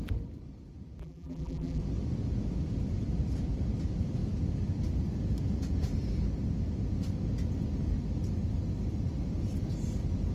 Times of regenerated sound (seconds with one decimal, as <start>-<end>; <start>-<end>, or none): 1.0-1.8

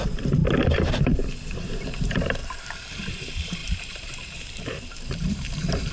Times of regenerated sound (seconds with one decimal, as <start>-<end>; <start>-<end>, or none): 0.0-0.4; 0.9-2.4; 2.9-5.9